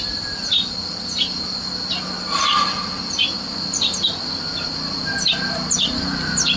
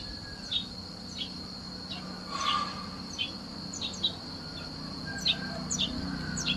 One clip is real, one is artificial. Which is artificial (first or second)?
second